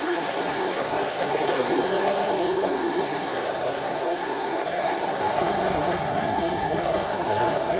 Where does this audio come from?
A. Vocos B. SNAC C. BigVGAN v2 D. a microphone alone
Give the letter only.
B